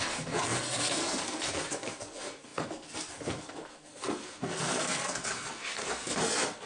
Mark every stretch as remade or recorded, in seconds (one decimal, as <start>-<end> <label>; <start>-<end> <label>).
0.0-6.7 remade